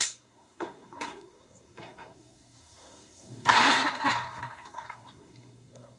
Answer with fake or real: fake